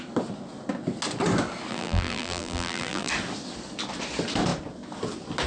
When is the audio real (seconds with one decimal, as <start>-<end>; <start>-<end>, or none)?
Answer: 0.0-1.7; 3.1-5.5